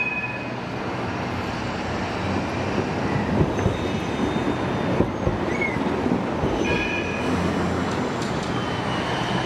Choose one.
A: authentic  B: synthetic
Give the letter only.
A